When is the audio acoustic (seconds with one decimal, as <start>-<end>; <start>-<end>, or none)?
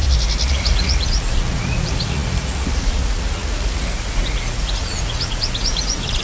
0.0-0.5